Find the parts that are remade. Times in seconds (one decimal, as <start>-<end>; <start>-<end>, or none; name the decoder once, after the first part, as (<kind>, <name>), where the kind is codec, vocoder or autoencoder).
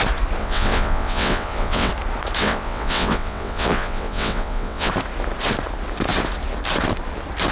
0.4-1.9 (vocoder, WaveNeXt); 2.4-4.9